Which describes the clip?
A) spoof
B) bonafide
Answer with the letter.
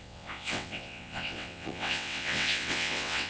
A